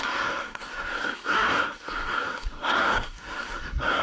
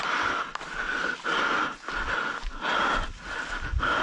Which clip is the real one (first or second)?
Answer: second